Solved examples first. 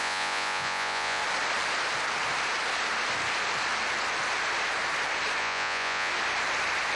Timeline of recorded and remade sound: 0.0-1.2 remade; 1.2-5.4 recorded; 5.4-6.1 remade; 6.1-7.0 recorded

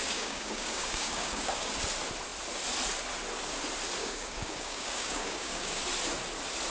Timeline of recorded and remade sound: 0.0-1.7 remade; 1.7-4.0 recorded; 4.0-5.8 remade; 5.8-6.7 recorded